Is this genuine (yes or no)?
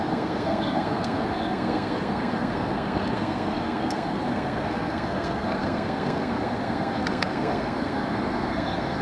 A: no